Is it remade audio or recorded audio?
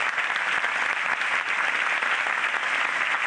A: recorded